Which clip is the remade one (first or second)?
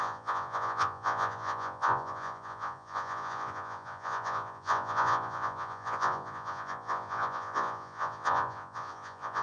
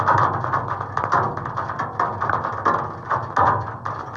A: first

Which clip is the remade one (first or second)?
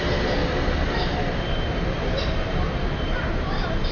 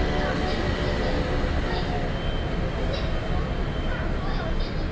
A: first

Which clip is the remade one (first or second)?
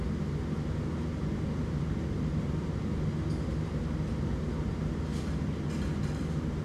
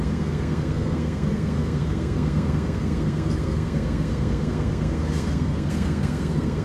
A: second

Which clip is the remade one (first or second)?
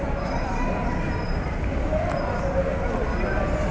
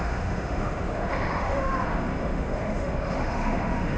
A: second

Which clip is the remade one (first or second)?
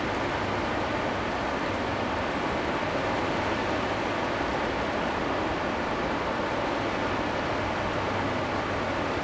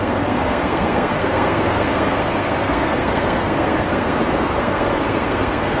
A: second